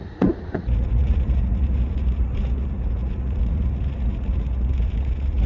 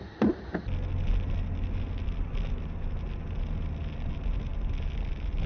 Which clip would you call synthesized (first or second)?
first